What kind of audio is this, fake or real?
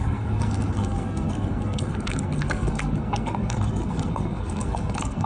fake